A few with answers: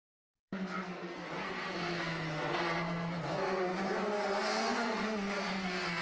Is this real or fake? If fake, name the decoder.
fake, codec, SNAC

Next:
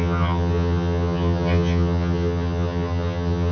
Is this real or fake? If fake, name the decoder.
fake, vocoder, HiFi-GAN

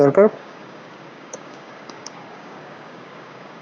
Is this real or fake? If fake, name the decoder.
fake, codec, DAC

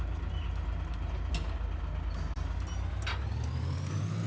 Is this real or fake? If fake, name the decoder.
real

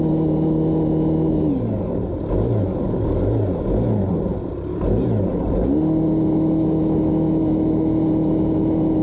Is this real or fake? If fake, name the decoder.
real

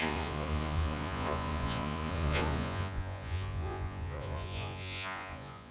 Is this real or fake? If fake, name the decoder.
fake, vocoder, Vocos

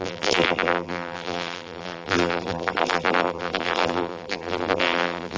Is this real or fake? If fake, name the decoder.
fake, vocoder, BigVGAN v2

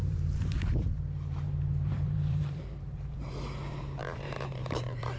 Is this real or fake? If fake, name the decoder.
fake, vocoder, BigVGAN v2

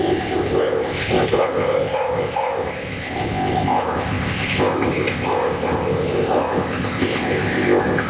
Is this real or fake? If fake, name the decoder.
fake, codec, ZipCodec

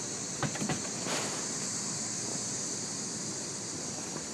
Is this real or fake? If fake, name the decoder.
real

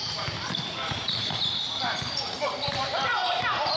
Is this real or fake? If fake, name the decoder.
fake, vocoder, BigVGAN v2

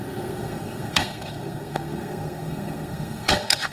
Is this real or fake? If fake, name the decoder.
fake, codec, SNAC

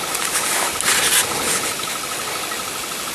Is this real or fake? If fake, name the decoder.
real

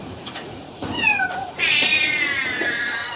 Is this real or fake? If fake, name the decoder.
fake, vocoder, Vocos